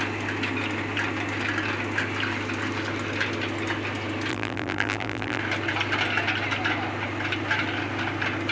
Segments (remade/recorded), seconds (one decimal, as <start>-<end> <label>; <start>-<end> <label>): 0.0-4.3 recorded; 4.3-5.4 remade; 5.4-8.5 recorded